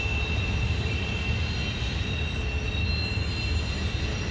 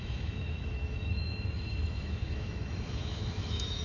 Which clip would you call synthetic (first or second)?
second